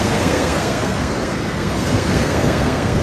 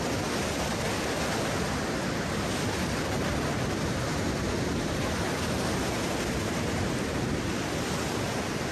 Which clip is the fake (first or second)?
first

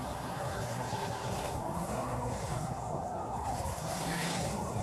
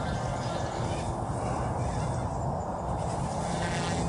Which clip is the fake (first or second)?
first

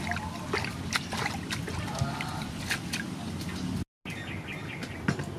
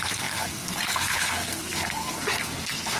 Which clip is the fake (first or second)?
second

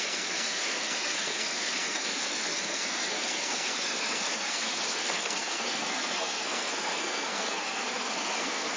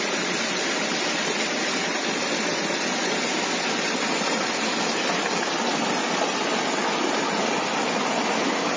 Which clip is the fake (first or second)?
first